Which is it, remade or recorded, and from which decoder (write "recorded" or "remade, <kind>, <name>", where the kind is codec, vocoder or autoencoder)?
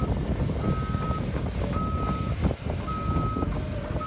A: recorded